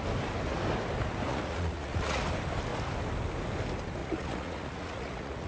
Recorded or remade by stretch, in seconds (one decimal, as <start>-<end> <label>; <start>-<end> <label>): 0.0-1.3 recorded; 1.3-2.2 remade; 2.2-4.0 recorded; 4.0-5.5 remade